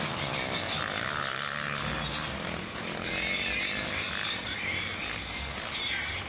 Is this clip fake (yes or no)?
no